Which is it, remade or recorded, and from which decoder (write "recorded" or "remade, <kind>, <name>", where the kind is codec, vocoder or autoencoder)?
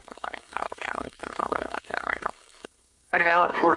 remade, codec, SNAC